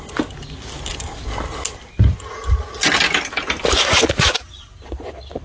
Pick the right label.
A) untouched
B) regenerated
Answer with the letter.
A